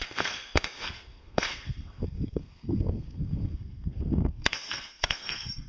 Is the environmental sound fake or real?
fake